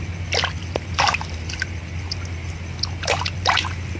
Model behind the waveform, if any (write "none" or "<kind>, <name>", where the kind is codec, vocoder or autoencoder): none